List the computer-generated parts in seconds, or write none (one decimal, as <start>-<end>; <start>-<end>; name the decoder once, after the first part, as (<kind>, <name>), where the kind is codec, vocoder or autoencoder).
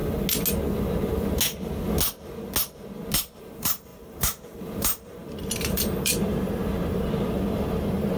3.4-8.2 (vocoder, BigVGAN v2)